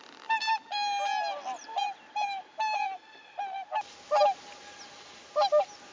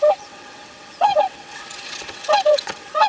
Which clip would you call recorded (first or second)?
first